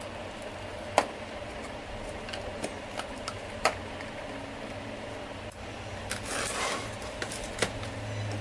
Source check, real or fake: real